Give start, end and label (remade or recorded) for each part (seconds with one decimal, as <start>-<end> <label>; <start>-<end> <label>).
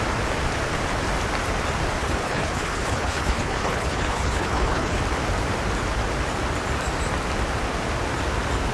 0.0-2.0 recorded; 2.0-5.0 remade; 5.0-8.7 recorded